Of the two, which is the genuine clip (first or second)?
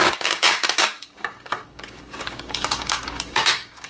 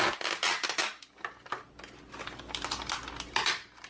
second